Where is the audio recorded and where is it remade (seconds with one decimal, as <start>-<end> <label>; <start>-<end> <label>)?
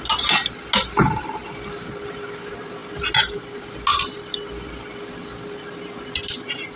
0.0-6.8 recorded